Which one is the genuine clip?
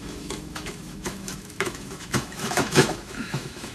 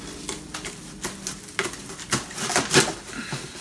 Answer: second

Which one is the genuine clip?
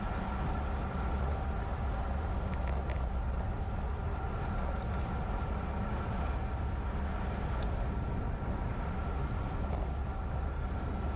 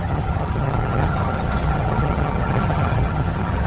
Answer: first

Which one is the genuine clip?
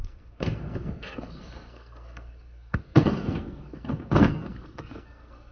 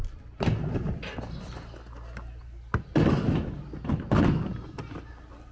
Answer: second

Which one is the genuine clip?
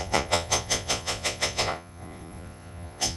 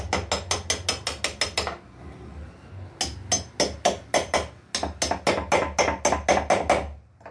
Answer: second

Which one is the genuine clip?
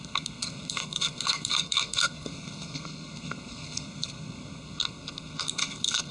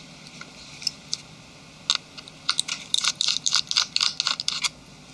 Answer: second